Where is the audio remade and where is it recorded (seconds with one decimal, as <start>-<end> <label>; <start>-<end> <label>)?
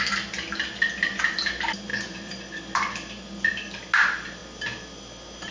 0.0-5.5 recorded